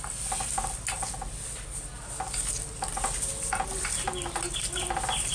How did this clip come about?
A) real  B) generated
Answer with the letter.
A